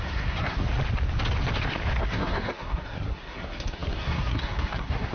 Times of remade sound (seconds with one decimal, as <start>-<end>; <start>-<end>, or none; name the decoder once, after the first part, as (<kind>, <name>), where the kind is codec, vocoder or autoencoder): 0.0-0.7 (codec, SNAC); 2.0-5.1